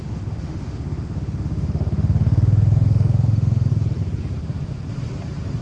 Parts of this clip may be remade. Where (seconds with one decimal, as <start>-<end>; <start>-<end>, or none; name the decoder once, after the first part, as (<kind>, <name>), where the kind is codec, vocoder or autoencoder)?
0.0-3.7 (autoencoder, DAC-VAE)